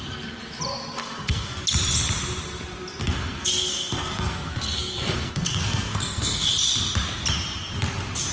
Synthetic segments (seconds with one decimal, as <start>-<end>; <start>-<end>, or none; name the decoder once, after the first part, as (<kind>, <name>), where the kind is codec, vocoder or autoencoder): 1.0-1.6 (codec, SNAC); 3.0-6.5